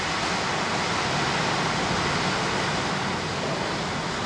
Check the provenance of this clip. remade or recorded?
recorded